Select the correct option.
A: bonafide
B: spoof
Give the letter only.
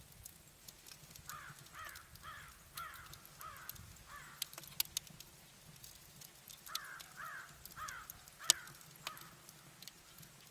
A